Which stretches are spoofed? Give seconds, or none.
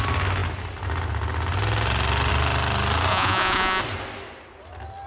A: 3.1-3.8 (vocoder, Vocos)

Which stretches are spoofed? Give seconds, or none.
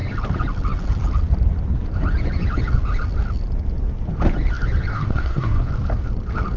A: 4.9-5.7 (codec, SNAC)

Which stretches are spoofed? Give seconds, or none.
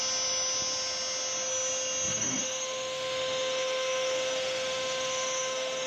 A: 2.1-5.9 (autoencoder, DAC-VAE)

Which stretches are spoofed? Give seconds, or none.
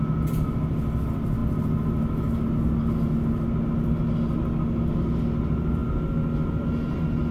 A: none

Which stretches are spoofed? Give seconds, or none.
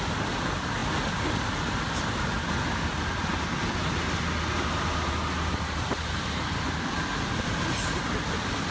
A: none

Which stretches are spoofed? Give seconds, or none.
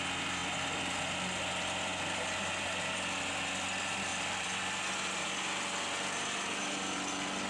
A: 4.1-4.8 (vocoder, BigVGAN v2)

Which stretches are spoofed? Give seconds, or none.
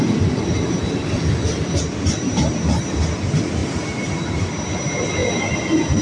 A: 3.6-4.5 (vocoder, BigVGAN v2)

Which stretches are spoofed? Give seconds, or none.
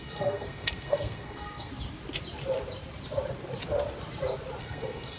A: 0.0-1.7 (codec, SNAC); 4.6-5.2